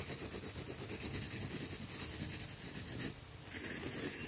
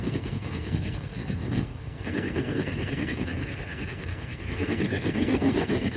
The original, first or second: first